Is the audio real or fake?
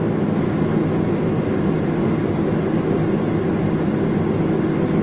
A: real